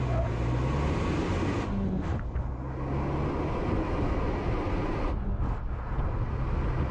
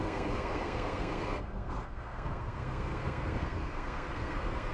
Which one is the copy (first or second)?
second